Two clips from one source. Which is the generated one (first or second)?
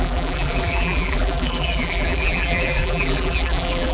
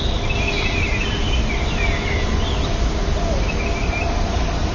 first